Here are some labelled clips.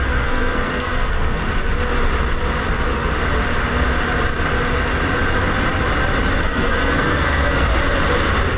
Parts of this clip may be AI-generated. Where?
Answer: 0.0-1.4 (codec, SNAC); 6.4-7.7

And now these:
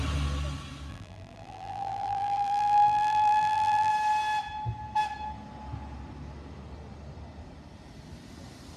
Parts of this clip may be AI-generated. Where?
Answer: 0.9-3.9 (vocoder, BigVGAN v2)

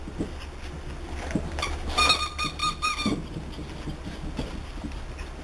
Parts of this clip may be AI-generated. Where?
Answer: none

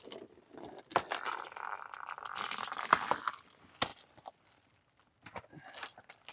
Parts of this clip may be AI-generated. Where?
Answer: none

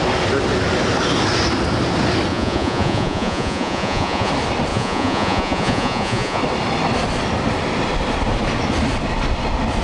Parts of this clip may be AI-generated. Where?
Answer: 2.3-4.3 (vocoder, Vocos); 4.7-6.4

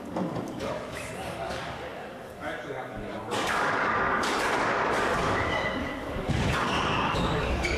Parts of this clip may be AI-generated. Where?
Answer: 0.0-7.8 (codec, DAC)